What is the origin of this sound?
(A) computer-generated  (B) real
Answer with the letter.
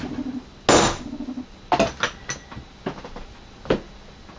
B